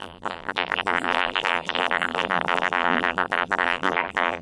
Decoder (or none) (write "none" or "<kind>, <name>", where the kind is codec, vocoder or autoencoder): vocoder, BigVGAN v2